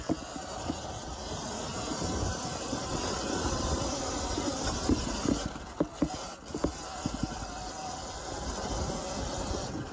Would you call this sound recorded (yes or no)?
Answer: yes